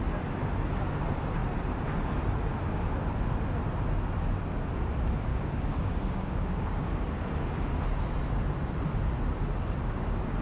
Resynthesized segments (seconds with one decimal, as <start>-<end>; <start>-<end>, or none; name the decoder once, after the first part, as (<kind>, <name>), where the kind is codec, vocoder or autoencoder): 5.3-7.0 (codec, DAC)